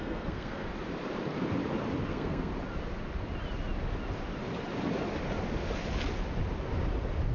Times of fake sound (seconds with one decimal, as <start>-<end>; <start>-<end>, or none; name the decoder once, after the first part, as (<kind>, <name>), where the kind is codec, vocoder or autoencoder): 0.0-0.7 (codec, SNAC); 2.1-2.5